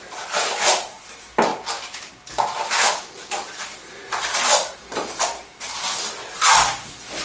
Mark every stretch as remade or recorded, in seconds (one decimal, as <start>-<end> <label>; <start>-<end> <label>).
0.0-7.2 recorded